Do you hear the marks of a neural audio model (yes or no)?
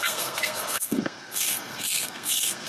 yes